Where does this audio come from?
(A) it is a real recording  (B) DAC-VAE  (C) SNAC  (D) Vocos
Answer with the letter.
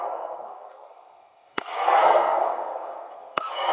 C